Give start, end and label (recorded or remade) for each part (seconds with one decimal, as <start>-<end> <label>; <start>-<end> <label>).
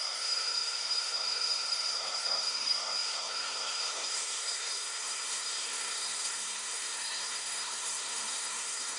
0.0-9.0 remade